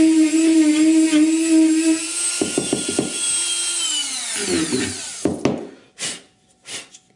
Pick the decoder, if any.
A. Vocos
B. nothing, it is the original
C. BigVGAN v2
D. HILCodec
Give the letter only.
B